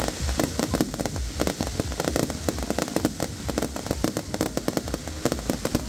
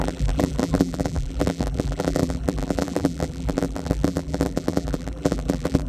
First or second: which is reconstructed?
second